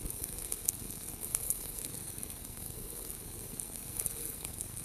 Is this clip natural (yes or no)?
no